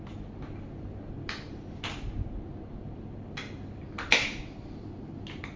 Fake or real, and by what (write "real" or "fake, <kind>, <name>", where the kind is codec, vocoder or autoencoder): real